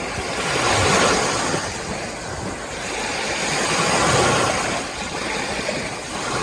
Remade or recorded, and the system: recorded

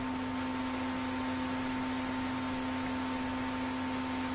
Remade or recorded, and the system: recorded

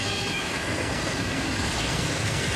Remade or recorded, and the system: remade, codec, SNAC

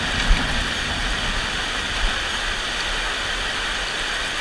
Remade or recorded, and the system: recorded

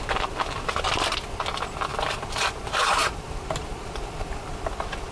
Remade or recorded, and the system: recorded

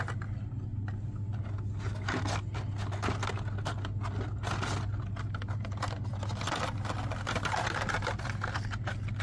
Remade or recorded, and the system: recorded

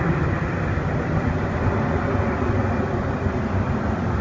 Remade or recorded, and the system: recorded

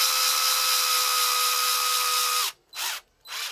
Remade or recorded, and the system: recorded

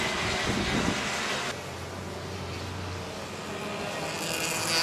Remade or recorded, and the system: recorded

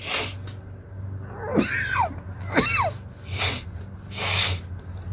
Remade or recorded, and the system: recorded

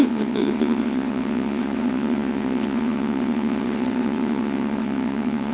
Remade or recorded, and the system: remade, vocoder, WaveNeXt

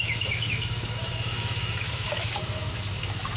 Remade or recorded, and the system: remade, autoencoder, DAC-VAE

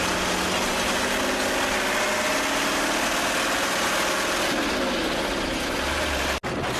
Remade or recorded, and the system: recorded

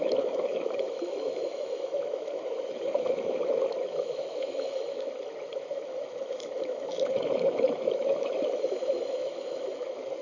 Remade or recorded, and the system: remade, autoencoder, DAC-VAE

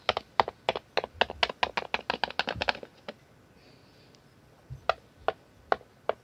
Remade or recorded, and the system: recorded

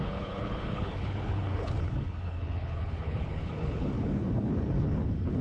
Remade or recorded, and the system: remade, codec, HILCodec